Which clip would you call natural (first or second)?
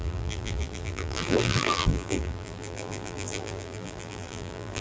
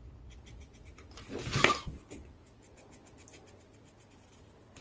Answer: second